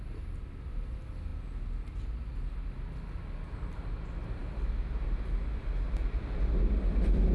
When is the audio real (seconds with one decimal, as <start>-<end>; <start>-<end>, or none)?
0.0-7.3